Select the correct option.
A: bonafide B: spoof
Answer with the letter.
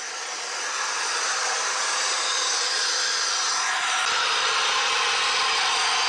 A